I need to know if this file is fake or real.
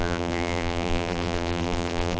fake